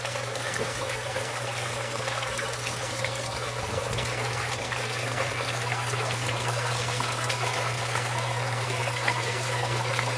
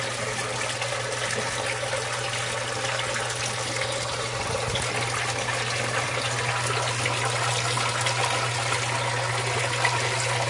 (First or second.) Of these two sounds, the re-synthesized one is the first